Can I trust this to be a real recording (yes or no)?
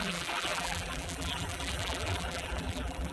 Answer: no